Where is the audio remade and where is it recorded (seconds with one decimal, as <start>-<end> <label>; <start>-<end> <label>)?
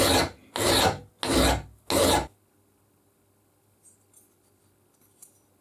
0.0-5.6 recorded